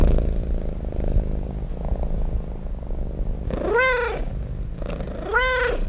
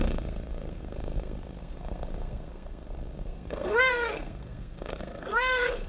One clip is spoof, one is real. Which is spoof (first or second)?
second